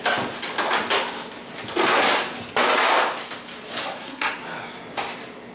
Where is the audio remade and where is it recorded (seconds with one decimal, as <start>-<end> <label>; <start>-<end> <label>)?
0.0-3.8 recorded; 3.8-4.4 remade; 4.4-5.5 recorded